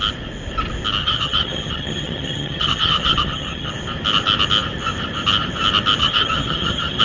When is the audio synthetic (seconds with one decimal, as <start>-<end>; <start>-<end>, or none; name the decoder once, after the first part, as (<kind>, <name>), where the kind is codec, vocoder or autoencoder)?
1.0-3.7 (vocoder, HiFi-GAN); 6.0-7.0